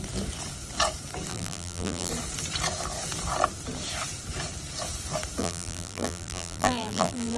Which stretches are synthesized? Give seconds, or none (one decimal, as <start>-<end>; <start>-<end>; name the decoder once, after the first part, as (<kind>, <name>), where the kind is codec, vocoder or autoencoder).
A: 1.3-2.1 (vocoder, BigVGAN v2); 5.4-7.4